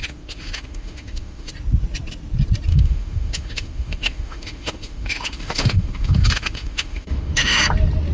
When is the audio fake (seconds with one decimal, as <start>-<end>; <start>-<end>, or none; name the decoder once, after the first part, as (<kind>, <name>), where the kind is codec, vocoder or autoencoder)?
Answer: 0.0-1.5 (autoencoder, DAC-VAE); 2.7-7.6